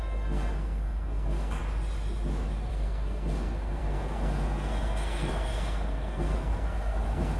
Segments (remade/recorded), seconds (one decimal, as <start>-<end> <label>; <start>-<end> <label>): 0.0-1.6 remade; 1.6-2.7 recorded; 2.7-7.4 remade